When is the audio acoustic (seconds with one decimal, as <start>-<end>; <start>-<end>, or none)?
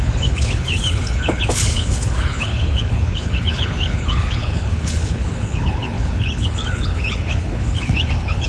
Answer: none